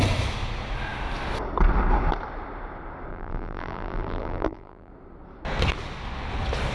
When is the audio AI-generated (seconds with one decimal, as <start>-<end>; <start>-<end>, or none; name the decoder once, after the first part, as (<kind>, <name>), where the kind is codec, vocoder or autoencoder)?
3.1-4.9 (vocoder, BigVGAN v2)

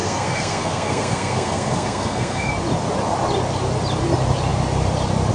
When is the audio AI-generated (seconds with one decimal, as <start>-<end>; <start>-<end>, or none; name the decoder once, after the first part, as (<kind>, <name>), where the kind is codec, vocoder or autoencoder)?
0.0-2.5 (codec, SNAC)

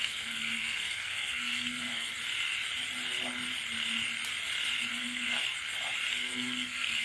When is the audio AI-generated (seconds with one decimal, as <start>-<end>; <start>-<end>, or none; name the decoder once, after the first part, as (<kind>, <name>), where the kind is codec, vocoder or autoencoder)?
0.0-2.1 (codec, SNAC); 4.9-5.4; 6.1-7.0